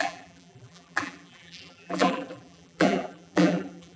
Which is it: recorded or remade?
remade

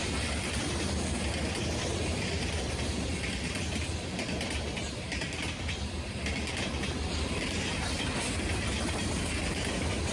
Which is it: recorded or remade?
remade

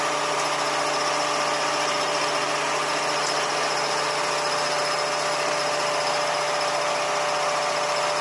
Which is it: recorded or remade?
recorded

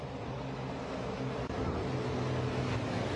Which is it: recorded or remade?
recorded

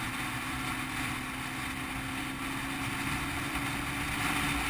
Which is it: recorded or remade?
recorded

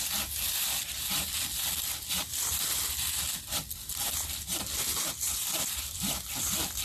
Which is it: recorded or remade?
recorded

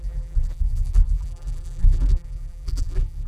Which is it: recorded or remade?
remade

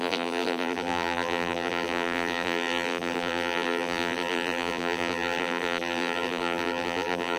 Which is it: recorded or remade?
remade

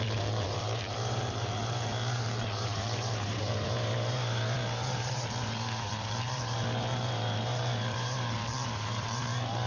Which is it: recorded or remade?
remade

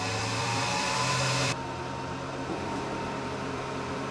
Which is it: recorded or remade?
remade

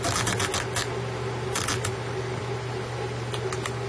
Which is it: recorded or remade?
recorded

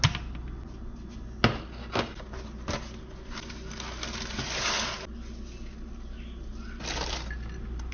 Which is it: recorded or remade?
recorded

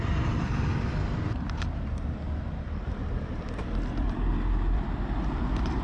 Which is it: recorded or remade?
remade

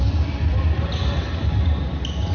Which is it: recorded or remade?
recorded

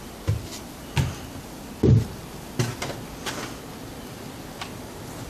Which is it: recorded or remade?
recorded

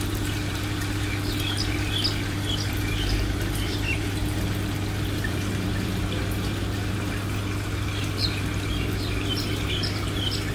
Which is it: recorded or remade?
remade